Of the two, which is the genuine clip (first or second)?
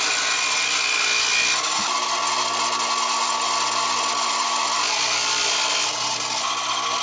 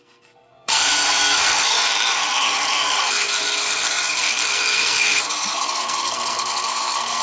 first